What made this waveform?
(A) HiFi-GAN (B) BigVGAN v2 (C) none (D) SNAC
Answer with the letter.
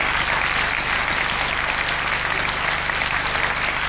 C